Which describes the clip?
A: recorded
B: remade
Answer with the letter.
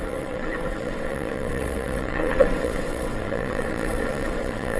B